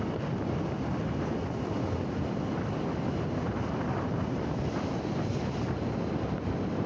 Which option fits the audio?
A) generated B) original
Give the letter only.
B